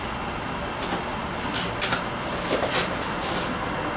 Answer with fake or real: real